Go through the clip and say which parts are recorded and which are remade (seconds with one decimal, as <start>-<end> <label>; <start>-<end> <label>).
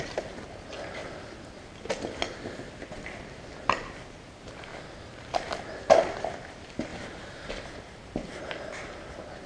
0.0-1.0 remade; 1.0-4.2 recorded; 4.2-4.7 remade; 4.7-5.8 recorded; 5.8-9.5 remade